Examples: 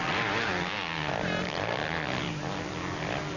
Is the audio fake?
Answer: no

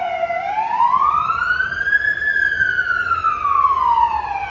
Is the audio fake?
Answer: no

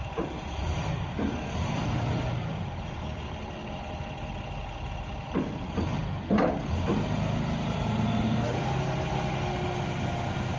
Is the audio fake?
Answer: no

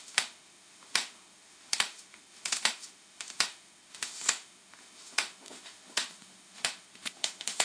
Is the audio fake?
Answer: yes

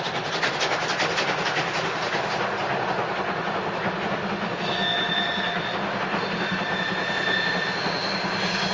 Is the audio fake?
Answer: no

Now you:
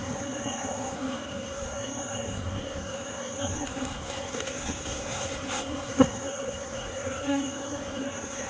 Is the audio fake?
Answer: yes